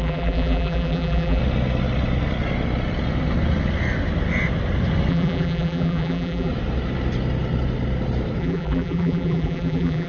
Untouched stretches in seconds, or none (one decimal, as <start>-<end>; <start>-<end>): 1.4-5.1; 6.5-8.4